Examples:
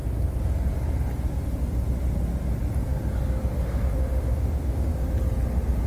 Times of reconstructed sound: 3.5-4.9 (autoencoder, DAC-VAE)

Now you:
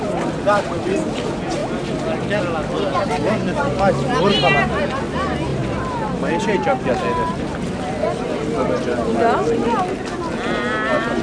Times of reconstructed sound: none

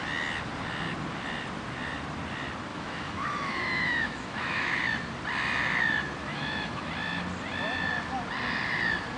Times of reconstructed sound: 2.7-4.8 (autoencoder, DAC-VAE); 6.2-6.9

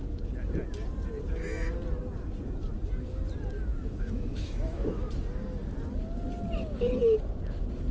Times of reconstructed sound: 3.7-5.1 (autoencoder, DAC-VAE)

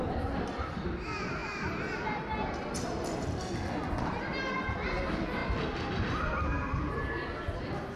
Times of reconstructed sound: none

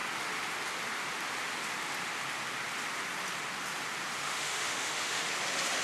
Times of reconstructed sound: 4.2-5.3 (autoencoder, DAC-VAE)

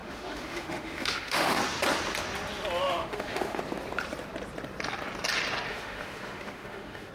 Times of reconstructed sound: 0.0-1.6 (autoencoder, DAC-VAE); 2.8-3.6; 5.7-7.1

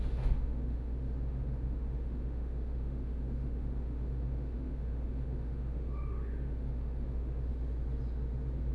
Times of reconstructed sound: 0.0-7.5 (autoencoder, DAC-VAE)